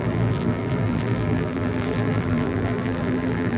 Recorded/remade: remade